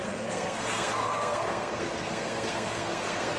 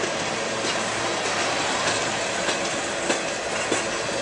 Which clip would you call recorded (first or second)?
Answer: second